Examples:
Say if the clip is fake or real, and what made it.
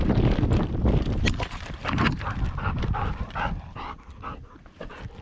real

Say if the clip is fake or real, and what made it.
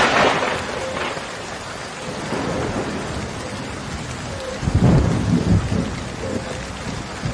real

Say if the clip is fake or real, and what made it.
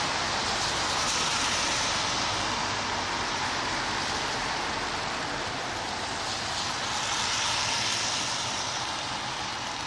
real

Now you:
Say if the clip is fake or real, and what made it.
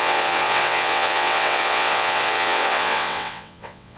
fake, vocoder, WaveNeXt